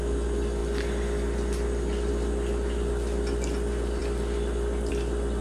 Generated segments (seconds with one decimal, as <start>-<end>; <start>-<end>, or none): none